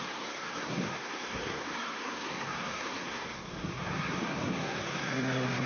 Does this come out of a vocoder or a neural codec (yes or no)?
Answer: yes